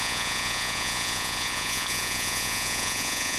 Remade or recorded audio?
remade